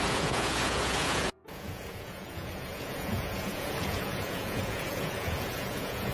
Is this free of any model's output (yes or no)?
no